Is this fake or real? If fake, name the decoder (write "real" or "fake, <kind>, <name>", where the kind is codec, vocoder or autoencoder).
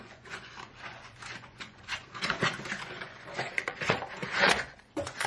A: fake, vocoder, Vocos